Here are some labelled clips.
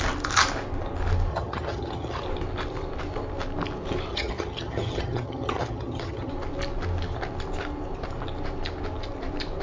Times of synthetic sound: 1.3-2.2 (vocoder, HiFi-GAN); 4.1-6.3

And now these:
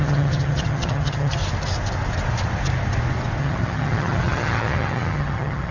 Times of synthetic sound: 0.0-1.4 (vocoder, HiFi-GAN); 3.4-5.7

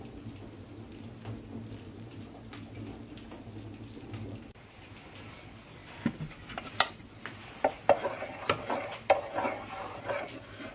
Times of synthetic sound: none

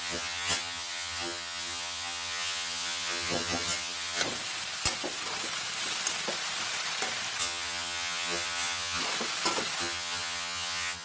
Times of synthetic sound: 0.0-4.2 (vocoder, HiFi-GAN); 7.4-9.0; 9.8-11.0

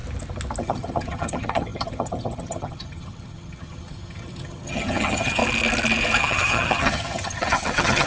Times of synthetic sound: 0.6-5.4 (vocoder, HiFi-GAN); 6.2-8.1

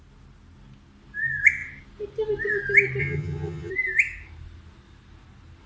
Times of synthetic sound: 3.0-3.7 (vocoder, HiFi-GAN)